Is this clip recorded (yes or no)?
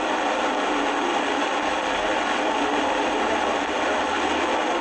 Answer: yes